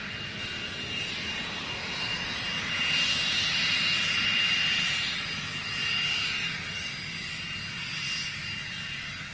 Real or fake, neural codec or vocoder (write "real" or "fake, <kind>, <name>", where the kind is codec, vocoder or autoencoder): real